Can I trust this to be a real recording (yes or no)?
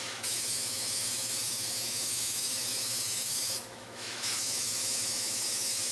no